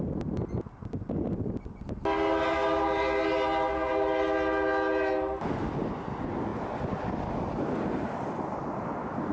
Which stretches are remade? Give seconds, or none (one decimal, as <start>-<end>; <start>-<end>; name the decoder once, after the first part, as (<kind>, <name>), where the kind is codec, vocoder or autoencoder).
none